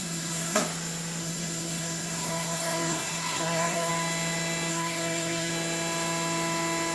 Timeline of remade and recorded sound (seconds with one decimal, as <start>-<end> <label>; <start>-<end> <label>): 0.0-0.6 remade; 0.6-1.2 recorded; 1.2-3.9 remade; 3.9-4.7 recorded; 4.7-5.5 remade; 5.5-6.9 recorded